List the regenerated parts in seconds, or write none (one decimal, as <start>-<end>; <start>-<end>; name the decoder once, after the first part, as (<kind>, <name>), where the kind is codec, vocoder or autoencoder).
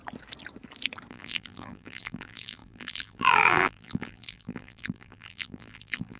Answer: 1.1-6.2 (vocoder, BigVGAN v2)